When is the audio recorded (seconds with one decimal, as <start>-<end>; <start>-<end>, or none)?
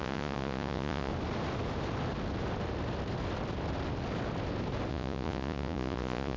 1.1-4.9